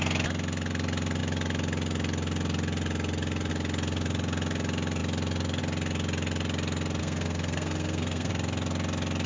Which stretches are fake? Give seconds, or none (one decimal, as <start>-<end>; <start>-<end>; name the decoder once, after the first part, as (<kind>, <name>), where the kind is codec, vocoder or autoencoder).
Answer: 7.0-8.3 (codec, SNAC)